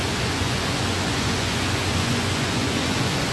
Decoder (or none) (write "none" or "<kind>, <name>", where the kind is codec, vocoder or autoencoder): vocoder, Vocos